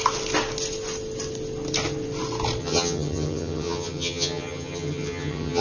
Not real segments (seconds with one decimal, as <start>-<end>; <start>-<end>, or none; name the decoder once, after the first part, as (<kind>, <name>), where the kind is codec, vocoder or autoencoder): 2.6-5.6 (vocoder, HiFi-GAN)